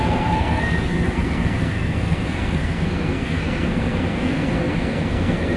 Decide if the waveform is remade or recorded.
remade